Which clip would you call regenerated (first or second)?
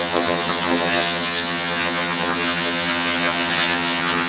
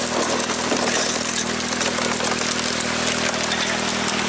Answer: first